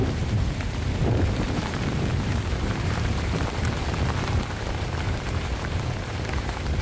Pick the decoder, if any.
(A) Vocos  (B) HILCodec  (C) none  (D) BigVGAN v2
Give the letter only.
D